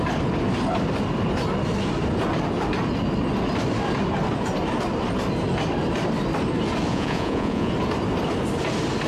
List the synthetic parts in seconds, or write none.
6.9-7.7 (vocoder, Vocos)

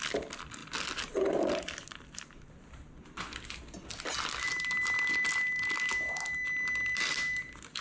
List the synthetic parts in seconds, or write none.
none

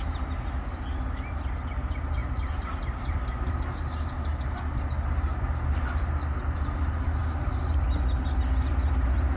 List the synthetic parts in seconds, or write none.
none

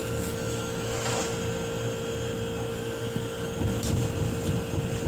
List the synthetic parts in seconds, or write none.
0.0-1.1 (codec, DAC); 2.7-3.5